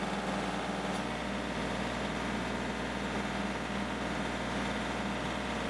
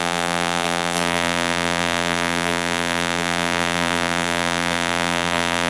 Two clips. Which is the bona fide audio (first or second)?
first